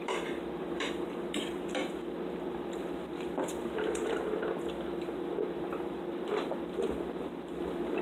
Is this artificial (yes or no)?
yes